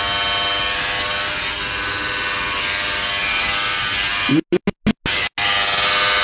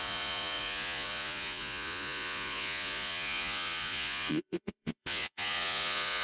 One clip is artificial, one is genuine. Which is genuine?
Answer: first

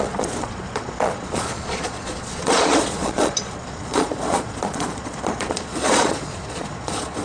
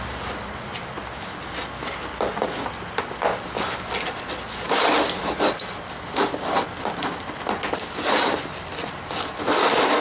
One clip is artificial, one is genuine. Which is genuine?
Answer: second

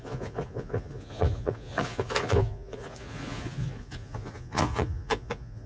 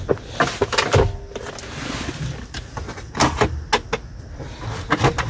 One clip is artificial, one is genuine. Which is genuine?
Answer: second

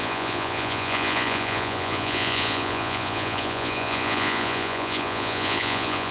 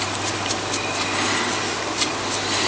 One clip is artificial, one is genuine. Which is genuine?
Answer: second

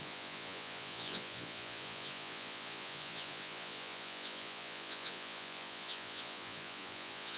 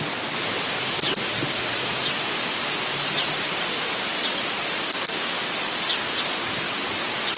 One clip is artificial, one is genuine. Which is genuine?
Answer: second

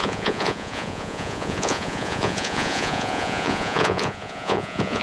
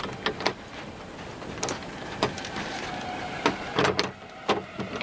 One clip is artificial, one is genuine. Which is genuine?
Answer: second